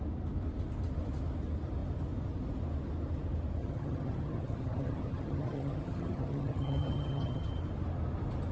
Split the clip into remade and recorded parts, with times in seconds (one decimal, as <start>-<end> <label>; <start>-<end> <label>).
0.0-3.6 recorded; 3.6-7.5 remade; 7.5-8.5 recorded